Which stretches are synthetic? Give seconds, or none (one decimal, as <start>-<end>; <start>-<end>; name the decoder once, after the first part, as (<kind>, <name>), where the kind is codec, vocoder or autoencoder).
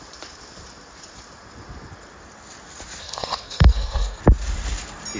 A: 3.0-4.2 (codec, SNAC)